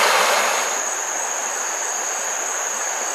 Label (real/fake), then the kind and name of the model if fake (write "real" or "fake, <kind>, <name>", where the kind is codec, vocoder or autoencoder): real